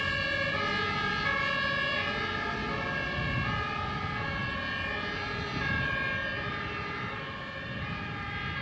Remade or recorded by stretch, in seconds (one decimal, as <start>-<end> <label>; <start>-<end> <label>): 0.0-8.6 recorded